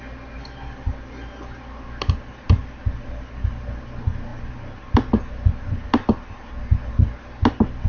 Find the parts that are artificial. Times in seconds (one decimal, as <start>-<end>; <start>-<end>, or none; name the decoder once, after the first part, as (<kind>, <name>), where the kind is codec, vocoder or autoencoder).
none

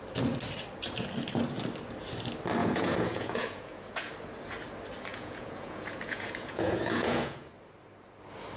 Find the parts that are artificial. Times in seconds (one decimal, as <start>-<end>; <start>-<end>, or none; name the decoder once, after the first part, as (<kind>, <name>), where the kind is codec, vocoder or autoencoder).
2.6-4.1 (vocoder, Vocos); 5.1-7.5

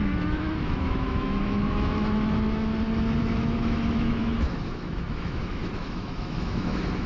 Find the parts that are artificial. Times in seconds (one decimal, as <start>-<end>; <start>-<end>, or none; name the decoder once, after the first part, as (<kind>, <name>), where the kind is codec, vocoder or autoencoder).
0.0-2.7 (autoencoder, DAC-VAE); 3.2-7.1

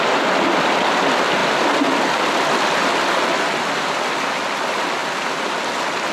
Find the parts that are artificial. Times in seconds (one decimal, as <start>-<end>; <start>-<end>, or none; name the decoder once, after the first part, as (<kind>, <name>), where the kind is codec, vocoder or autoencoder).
none

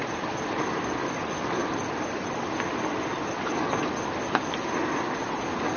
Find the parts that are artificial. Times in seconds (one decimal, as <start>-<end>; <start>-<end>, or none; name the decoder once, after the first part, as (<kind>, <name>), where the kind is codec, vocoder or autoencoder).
0.0-3.5 (vocoder, BigVGAN v2)

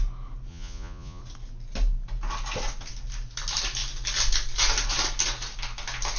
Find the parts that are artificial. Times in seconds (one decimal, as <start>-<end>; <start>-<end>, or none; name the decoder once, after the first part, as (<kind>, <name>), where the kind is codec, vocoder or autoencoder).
0.5-1.2 (vocoder, Vocos)

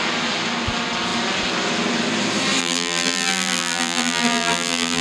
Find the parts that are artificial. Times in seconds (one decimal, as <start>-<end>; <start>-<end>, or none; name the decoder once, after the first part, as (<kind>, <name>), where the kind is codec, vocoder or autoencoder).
2.6-5.0 (vocoder, BigVGAN v2)

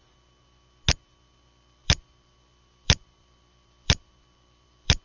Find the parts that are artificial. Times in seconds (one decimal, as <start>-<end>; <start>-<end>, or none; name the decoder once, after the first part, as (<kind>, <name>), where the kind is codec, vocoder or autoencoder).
1.8-5.0 (vocoder, BigVGAN v2)